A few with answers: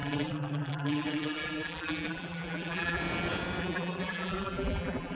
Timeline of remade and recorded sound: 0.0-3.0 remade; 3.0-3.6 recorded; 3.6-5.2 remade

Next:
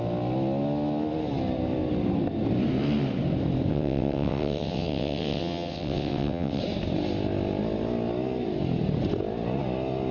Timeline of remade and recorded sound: 0.0-3.7 recorded; 3.7-6.6 remade; 6.6-10.1 recorded

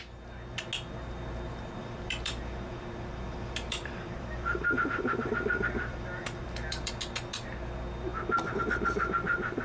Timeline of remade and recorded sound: 0.0-1.8 recorded; 1.8-6.9 remade; 6.9-9.6 recorded

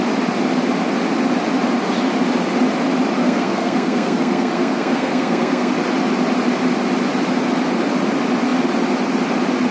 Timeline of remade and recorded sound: 0.0-3.2 recorded; 3.2-5.7 remade; 5.7-9.7 recorded

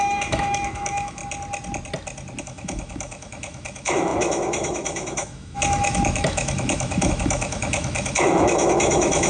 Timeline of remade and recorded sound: 0.0-1.2 remade; 1.2-2.4 recorded; 2.4-9.3 remade

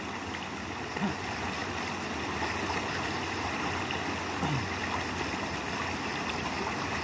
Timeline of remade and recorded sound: 0.0-7.0 recorded

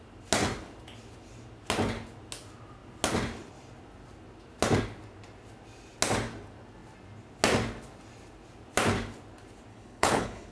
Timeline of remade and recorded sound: 0.0-9.7 recorded; 9.7-10.5 remade